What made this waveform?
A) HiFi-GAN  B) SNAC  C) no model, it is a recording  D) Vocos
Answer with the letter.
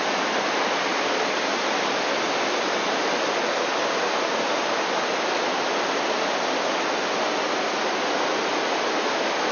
C